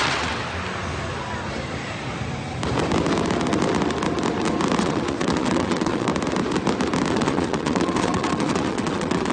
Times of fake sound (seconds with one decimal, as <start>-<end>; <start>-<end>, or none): 0.0-0.4; 4.8-6.1; 7.1-9.3

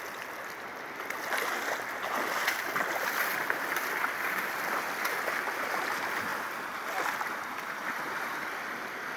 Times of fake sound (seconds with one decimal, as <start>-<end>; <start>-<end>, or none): none

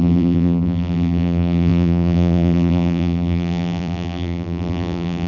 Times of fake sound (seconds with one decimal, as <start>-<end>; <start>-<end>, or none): 0.0-5.3

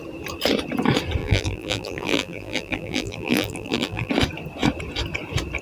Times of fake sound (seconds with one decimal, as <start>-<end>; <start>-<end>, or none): 1.2-4.1

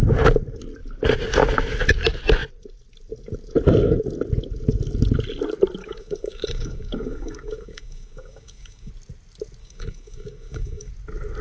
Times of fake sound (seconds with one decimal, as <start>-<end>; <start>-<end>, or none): 5.8-8.9; 9.6-10.9

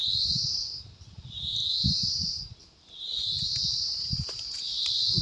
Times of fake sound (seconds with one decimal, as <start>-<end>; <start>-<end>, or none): none